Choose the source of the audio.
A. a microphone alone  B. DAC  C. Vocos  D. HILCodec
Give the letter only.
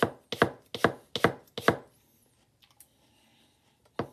A